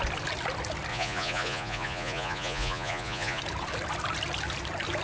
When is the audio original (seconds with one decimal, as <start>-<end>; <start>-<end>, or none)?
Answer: 0.0-0.9; 3.4-5.0